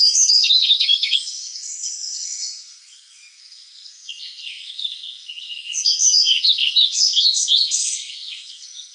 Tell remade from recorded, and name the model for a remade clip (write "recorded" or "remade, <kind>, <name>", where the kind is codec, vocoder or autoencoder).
remade, codec, SNAC